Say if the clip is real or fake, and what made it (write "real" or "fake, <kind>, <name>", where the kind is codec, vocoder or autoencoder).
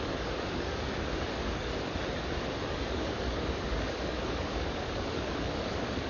fake, codec, DAC